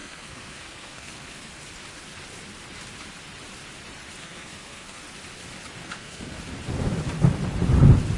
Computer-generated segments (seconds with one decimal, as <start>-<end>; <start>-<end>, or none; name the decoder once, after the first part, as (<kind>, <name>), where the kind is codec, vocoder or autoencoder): 0.0-1.5 (codec, SNAC); 4.2-5.0; 5.8-6.4